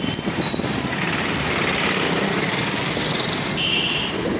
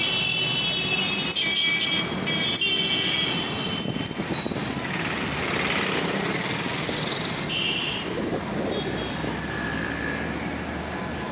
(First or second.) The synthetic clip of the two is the first